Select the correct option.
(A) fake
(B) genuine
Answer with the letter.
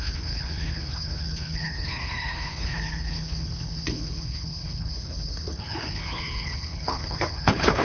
A